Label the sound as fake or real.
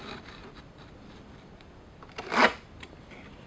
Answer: real